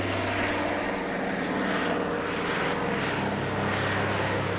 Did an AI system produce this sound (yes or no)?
no